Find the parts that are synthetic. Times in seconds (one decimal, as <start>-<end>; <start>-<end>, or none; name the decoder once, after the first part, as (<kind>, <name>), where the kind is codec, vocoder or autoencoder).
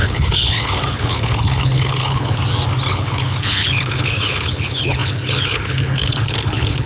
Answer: 0.0-2.4 (codec, HILCodec); 2.9-6.9